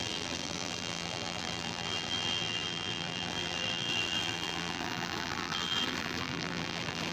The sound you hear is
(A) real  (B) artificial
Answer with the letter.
B